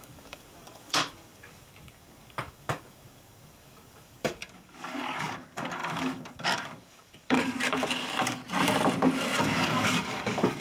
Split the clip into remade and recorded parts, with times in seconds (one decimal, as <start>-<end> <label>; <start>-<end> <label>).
0.0-8.4 remade; 8.4-9.4 recorded; 9.4-10.6 remade